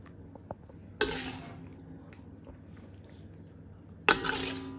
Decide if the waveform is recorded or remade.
recorded